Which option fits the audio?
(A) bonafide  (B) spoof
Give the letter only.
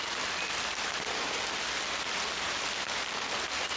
B